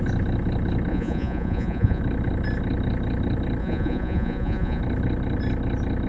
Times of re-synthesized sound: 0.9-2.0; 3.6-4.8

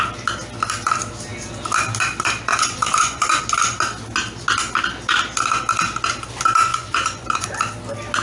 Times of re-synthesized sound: 2.5-3.4; 6.7-7.5

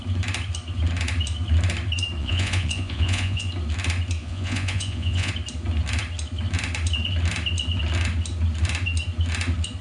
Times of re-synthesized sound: 2.2-3.5; 4.2-5.3

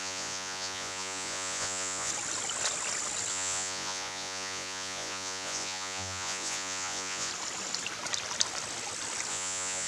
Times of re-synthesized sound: 0.0-2.1; 3.3-7.3; 9.3-9.9

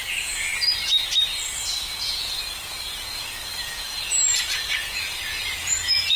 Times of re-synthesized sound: 0.0-0.5; 1.9-6.2

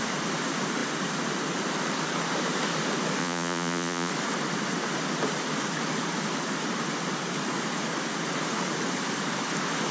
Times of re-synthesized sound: 3.2-4.1

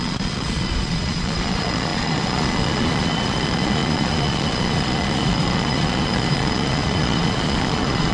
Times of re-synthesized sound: 0.0-8.1

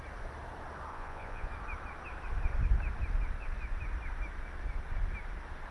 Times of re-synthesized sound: 0.9-1.5